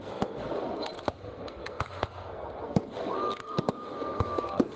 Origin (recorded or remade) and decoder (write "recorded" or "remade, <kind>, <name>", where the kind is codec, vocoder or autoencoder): remade, codec, SNAC